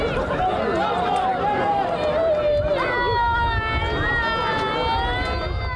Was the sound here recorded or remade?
recorded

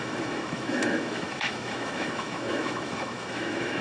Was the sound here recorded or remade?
remade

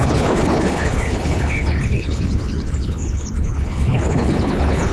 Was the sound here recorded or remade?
remade